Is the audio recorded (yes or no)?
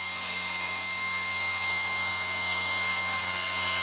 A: no